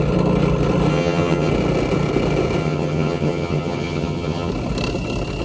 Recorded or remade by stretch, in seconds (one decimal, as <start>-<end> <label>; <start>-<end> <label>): 0.0-0.9 recorded; 0.9-1.5 remade; 1.5-2.6 recorded; 2.6-4.5 remade; 4.5-5.4 recorded

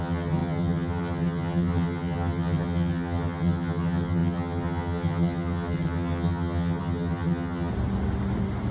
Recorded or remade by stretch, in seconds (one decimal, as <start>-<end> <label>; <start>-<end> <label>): 0.0-7.7 remade; 7.7-8.7 recorded

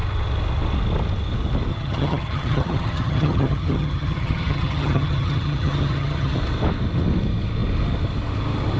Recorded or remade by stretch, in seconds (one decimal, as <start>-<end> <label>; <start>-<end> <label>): 0.0-1.7 recorded; 1.7-6.4 remade; 6.4-8.8 recorded